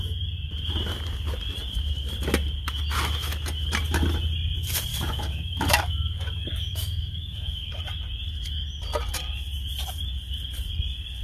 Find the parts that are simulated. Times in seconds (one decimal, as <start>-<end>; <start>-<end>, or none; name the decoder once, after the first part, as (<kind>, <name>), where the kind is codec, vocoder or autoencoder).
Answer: 4.9-7.8 (codec, DAC)